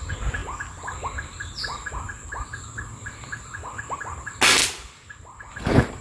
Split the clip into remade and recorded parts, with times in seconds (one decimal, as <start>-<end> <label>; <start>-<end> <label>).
0.0-6.0 recorded